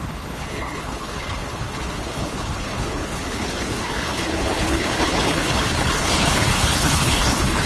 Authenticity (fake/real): fake